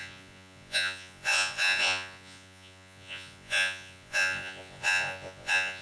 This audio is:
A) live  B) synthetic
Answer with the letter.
B